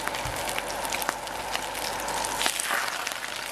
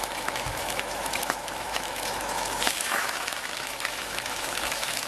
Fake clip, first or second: second